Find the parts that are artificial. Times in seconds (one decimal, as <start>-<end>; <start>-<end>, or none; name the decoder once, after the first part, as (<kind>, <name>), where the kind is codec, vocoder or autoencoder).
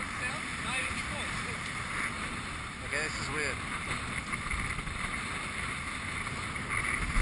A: none